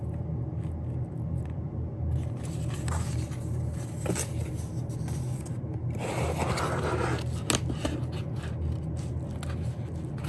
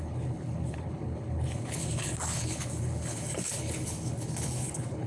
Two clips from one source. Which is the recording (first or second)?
first